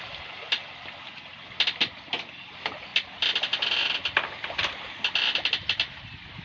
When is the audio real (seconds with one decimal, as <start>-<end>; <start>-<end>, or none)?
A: 0.0-6.4